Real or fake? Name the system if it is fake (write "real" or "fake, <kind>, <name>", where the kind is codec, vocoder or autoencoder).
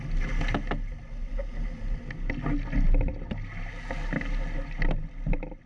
real